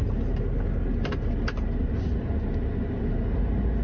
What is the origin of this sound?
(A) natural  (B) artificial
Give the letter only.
A